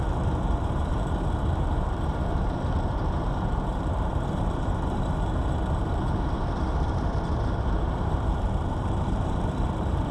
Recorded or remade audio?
remade